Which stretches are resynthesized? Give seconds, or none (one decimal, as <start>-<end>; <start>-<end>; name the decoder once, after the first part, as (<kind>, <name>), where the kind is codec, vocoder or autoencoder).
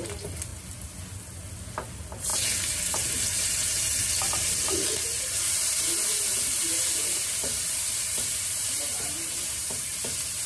2.3-5.8 (vocoder, BigVGAN v2); 6.3-10.0